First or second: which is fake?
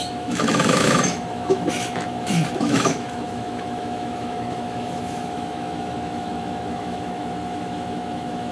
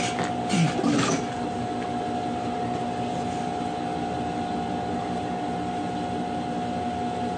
first